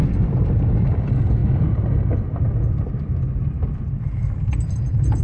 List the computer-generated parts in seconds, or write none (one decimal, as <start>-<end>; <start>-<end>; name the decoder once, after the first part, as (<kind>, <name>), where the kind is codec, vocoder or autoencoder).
none